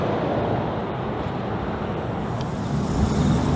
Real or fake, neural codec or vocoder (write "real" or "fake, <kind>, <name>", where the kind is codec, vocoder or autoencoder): real